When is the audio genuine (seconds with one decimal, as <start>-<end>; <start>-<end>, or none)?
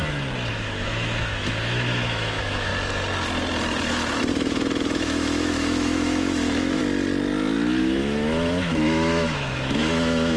0.0-0.5; 2.7-4.3; 6.8-7.8